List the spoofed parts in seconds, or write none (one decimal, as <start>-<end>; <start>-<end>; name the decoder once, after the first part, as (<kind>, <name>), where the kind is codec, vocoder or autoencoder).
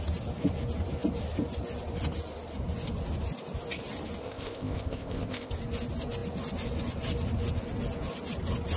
4.2-5.5 (codec, ZipCodec)